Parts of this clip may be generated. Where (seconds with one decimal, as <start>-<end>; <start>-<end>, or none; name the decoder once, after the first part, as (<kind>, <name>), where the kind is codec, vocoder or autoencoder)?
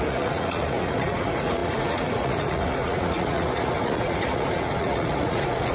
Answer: 0.0-5.7 (vocoder, Vocos)